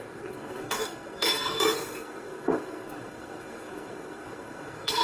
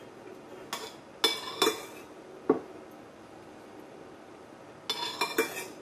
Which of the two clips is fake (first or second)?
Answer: first